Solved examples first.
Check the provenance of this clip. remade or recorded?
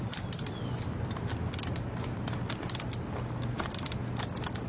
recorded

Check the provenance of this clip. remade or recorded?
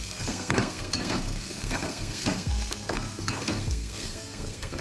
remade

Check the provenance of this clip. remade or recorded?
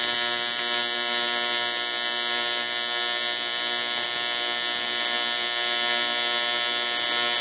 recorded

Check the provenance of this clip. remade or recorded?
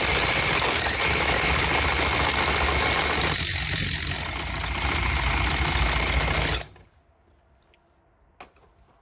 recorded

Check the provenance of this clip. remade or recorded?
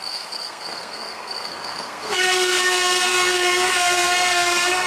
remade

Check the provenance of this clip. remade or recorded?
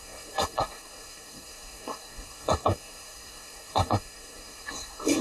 remade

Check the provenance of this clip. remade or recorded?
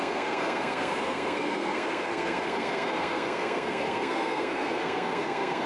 remade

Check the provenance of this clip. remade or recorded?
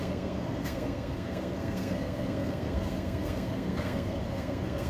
remade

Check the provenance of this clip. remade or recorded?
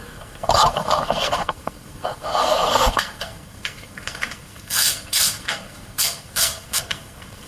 remade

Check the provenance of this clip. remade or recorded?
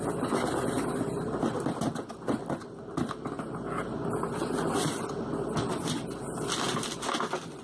recorded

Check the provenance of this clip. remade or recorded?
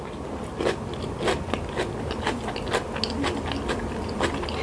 recorded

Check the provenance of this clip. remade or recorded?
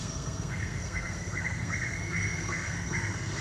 remade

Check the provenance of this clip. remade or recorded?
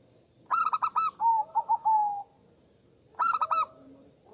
recorded